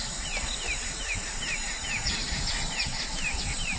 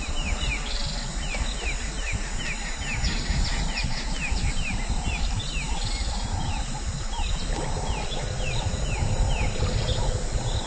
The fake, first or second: first